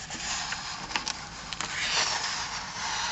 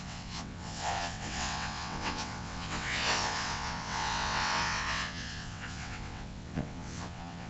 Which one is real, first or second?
first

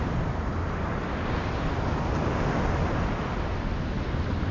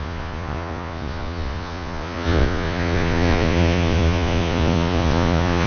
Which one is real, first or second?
first